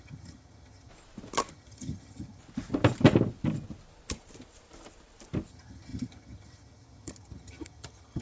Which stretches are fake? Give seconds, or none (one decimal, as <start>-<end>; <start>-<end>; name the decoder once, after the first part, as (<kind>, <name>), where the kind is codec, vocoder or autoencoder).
0.0-0.9 (vocoder, HiFi-GAN); 1.5-2.4; 5.5-8.2